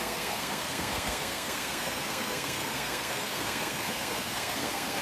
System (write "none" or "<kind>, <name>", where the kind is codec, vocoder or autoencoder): codec, SNAC